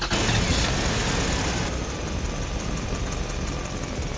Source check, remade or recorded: recorded